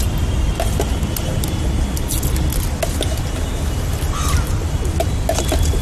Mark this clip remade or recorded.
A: recorded